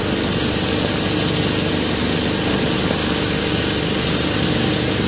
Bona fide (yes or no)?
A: yes